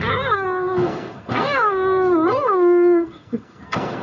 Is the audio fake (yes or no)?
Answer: yes